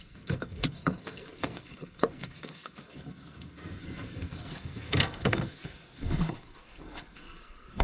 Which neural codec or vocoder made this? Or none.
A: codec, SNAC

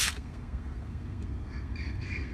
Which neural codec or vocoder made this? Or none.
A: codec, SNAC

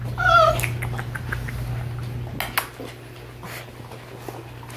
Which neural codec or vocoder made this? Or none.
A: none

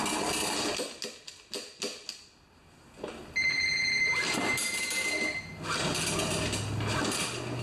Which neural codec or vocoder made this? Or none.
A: none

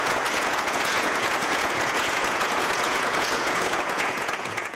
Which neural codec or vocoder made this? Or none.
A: vocoder, Vocos